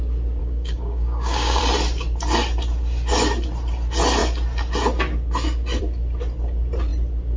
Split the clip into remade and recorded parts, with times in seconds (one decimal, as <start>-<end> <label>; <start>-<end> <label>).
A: 0.0-0.4 recorded; 0.4-1.6 remade; 1.6-7.4 recorded